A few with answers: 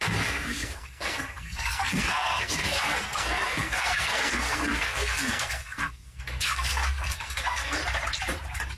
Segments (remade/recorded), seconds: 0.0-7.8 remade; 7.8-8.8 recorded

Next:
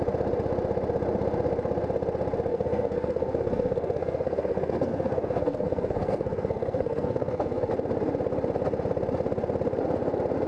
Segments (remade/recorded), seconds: 0.0-2.5 recorded; 2.5-7.7 remade; 7.7-10.5 recorded

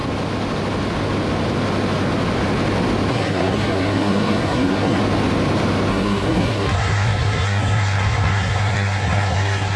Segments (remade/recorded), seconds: 0.0-3.1 recorded; 3.1-5.0 remade; 5.0-5.9 recorded; 5.9-9.8 remade